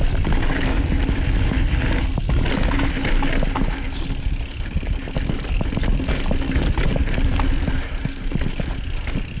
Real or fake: real